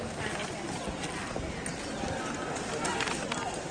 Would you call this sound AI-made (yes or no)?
no